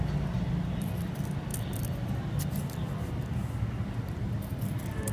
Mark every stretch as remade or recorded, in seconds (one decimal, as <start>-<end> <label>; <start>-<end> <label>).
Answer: 0.0-5.1 recorded